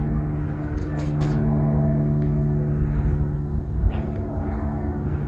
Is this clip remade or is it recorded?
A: remade